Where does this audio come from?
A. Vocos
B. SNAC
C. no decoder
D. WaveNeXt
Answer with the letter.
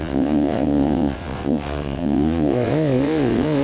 D